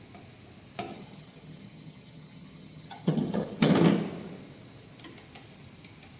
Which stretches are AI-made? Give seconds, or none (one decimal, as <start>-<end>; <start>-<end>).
0.9-3.7